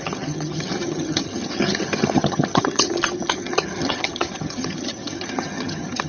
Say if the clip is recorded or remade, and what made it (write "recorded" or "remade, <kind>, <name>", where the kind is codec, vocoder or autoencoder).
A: remade, vocoder, HiFi-GAN